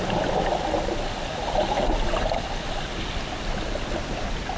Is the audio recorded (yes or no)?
yes